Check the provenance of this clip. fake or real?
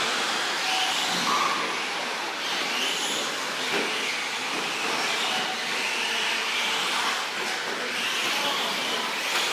real